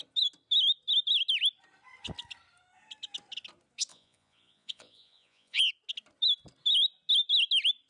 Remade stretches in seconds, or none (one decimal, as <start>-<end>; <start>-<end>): 3.9-5.6